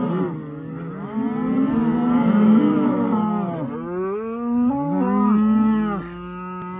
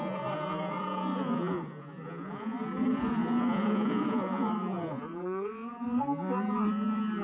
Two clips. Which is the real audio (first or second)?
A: first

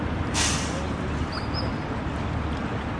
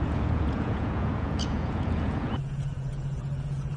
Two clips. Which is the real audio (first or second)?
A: first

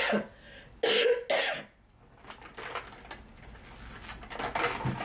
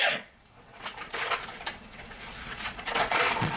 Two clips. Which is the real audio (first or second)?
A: first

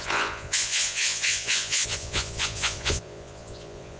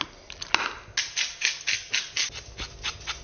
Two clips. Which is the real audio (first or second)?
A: second